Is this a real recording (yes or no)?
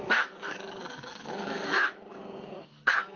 no